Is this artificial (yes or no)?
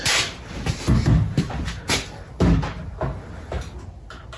no